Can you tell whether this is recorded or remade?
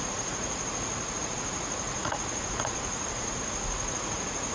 remade